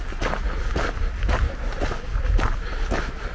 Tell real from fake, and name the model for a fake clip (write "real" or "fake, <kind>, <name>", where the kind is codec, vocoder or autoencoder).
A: real